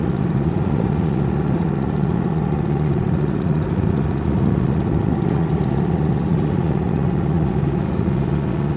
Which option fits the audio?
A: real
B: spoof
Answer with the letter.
B